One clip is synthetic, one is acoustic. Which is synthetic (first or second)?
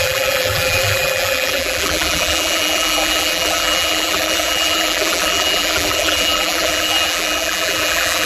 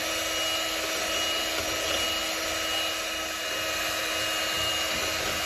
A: first